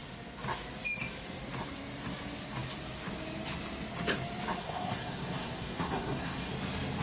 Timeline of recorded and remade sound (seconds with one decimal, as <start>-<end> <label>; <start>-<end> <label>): 0.0-4.6 recorded; 4.6-6.5 remade; 6.5-7.0 recorded